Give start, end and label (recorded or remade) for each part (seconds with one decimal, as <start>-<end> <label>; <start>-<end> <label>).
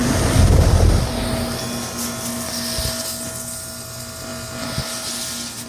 0.0-5.7 recorded